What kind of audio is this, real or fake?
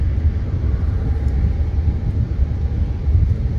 real